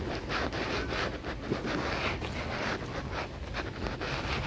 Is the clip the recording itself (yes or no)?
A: yes